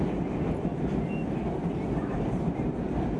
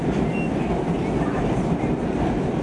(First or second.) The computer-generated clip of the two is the first